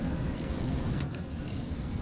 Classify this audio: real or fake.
fake